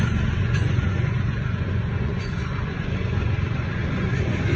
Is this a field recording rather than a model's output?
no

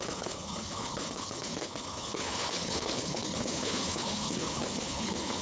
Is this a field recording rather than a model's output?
no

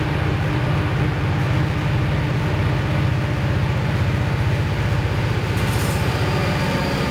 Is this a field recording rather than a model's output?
yes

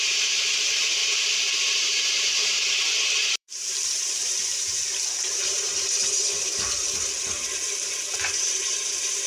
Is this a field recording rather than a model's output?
no